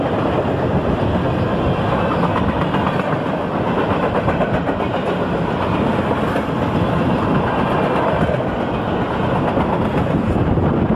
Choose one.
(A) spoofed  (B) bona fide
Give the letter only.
B